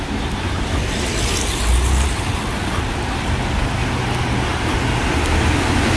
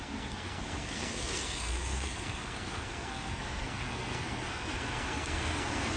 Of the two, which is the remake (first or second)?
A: second